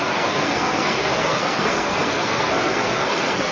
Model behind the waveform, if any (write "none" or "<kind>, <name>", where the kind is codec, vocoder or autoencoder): codec, SNAC